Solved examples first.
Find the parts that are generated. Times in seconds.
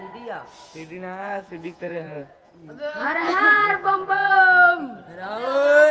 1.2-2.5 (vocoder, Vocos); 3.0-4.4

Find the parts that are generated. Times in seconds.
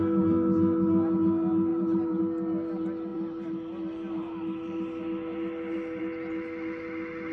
1.7-2.2 (vocoder, BigVGAN v2); 3.1-6.0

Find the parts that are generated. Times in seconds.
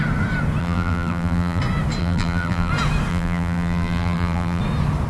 0.6-1.6 (vocoder, BigVGAN v2); 2.0-2.7; 3.1-4.6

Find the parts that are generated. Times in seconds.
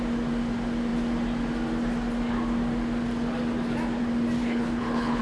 4.4-5.2 (codec, HILCodec)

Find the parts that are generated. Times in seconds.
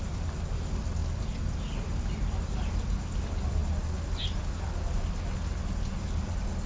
none